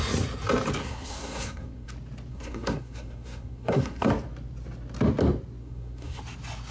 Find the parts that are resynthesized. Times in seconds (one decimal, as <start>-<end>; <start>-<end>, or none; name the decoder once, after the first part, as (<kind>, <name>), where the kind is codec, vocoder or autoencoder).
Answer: 0.8-1.9 (codec, SNAC); 2.3-4.1; 5.6-6.2